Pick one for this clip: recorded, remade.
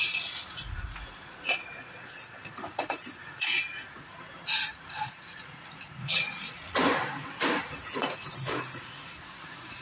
remade